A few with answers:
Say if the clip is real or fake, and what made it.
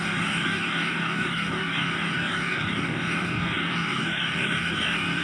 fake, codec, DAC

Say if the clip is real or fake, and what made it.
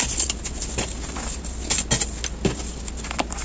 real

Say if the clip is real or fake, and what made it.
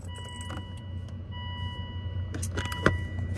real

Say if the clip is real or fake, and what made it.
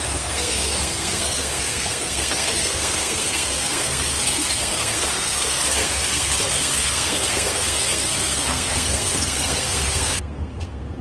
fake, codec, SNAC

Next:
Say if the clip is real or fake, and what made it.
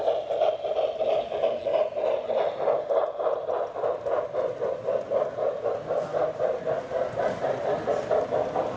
real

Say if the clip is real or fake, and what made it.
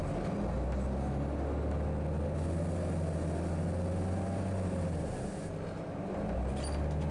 real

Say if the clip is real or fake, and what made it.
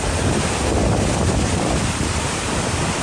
real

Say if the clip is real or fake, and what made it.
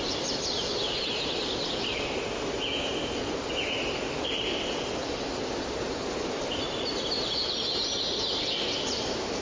real